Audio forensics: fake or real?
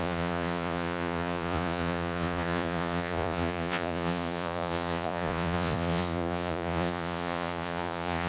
fake